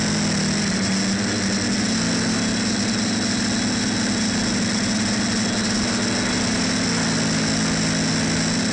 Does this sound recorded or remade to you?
recorded